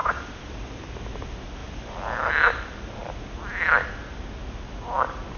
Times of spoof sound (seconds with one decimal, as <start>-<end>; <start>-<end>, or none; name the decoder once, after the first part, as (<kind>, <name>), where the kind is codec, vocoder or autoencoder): none